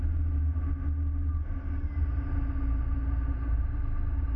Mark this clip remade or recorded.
recorded